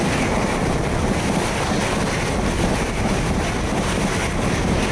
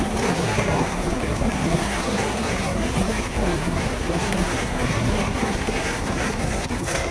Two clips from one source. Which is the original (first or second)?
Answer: first